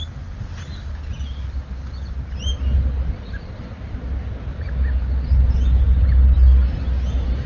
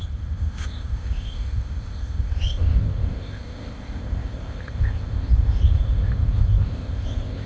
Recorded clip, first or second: first